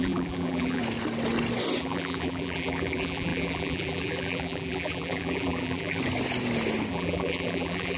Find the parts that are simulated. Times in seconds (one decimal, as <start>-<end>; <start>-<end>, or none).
0.0-0.8; 1.8-6.0; 6.9-8.0